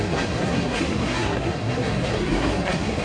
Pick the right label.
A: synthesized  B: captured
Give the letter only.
A